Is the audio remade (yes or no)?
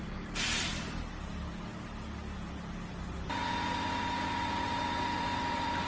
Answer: yes